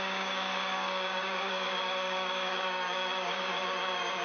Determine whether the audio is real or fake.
fake